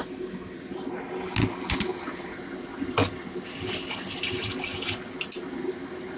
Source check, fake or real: real